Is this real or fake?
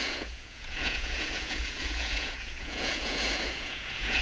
fake